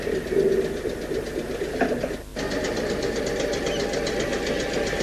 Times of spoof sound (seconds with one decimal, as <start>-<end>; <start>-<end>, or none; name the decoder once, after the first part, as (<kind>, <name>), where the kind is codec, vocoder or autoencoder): none